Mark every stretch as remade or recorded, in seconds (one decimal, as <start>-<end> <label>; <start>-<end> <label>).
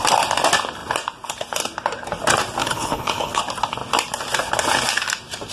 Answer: 0.0-2.6 recorded; 2.6-3.4 remade; 3.4-5.5 recorded